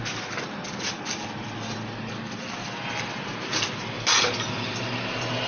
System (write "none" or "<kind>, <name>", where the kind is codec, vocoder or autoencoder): none